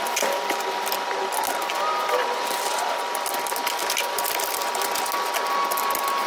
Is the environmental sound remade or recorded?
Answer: recorded